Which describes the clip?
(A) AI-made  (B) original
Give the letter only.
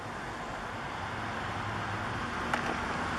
B